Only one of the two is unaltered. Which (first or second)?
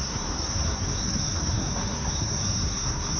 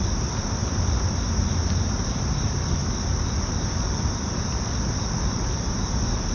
second